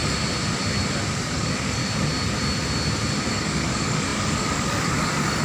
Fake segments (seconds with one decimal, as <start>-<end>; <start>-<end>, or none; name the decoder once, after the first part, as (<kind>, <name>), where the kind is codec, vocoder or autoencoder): 1.1-1.8 (codec, DAC); 3.3-5.4